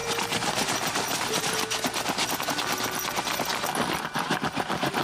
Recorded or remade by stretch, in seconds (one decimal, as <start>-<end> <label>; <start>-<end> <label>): 0.0-5.0 recorded